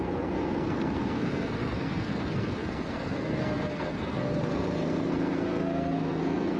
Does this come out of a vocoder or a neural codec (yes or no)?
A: yes